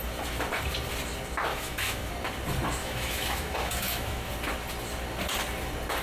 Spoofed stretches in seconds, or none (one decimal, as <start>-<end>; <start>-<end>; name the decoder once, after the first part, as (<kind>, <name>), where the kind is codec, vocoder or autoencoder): 1.5-2.1 (autoencoder, DAC-VAE); 2.8-4.3